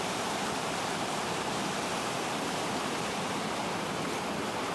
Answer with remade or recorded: remade